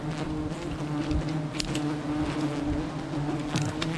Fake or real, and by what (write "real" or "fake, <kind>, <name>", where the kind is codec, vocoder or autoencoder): real